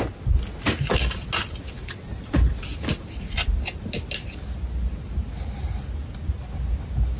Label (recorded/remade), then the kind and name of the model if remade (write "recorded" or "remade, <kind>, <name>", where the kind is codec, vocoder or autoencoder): recorded